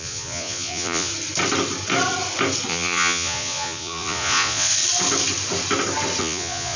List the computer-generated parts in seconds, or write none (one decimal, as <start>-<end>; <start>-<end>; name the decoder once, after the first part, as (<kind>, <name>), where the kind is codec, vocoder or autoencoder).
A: 0.0-1.1 (vocoder, Vocos); 2.7-4.7; 6.2-6.8

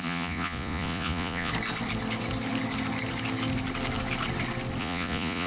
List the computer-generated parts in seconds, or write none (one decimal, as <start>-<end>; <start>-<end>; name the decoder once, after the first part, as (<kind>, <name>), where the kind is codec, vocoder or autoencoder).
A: 0.0-1.5 (vocoder, Vocos); 4.8-5.5

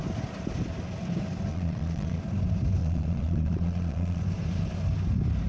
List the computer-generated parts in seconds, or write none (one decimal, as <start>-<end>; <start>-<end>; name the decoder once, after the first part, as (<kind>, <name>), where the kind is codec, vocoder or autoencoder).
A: 1.5-2.2 (vocoder, Vocos); 2.8-4.2